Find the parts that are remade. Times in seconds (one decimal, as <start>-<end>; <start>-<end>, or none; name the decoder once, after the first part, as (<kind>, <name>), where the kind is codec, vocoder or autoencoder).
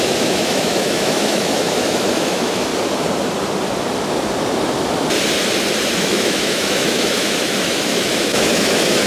0.0-2.7 (autoencoder, DAC-VAE); 5.9-9.1